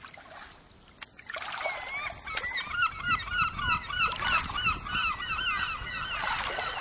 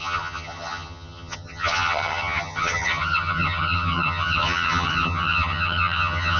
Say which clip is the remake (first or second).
second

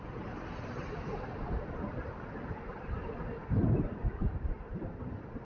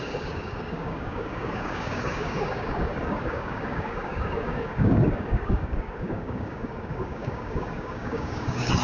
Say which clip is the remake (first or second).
second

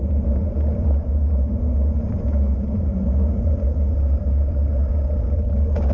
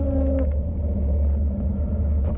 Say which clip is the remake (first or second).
first